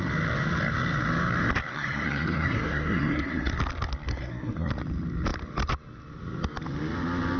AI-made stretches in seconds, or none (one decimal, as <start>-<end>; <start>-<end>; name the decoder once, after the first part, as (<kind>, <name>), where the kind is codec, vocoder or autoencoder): 1.7-3.5 (codec, SNAC); 4.1-4.7